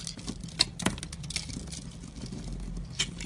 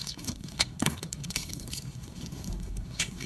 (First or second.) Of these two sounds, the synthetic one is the second